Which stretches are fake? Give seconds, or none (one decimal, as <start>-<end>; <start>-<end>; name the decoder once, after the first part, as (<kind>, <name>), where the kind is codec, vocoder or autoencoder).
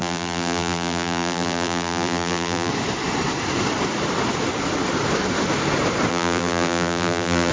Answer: 0.0-2.7 (vocoder, BigVGAN v2); 6.1-7.5